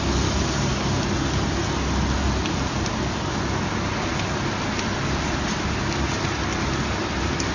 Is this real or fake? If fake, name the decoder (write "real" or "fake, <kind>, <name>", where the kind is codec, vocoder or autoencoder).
real